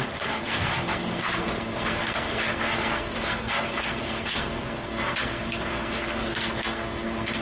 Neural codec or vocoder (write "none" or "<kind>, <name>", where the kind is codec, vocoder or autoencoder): codec, SNAC